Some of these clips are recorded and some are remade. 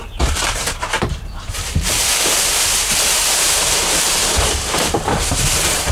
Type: remade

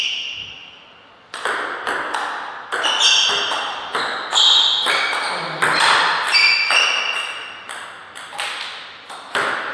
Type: recorded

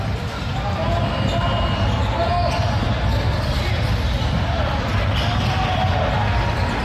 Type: recorded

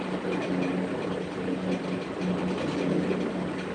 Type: recorded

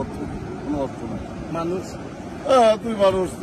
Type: recorded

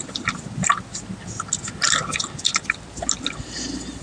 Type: recorded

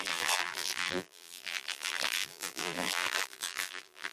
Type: remade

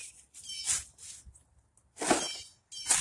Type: recorded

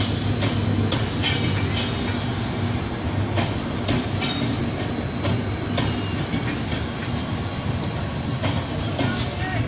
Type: recorded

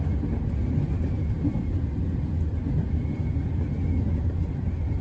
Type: recorded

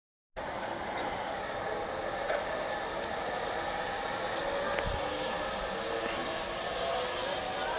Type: recorded